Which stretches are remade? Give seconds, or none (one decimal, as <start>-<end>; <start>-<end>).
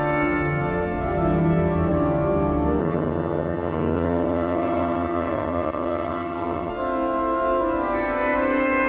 2.8-6.7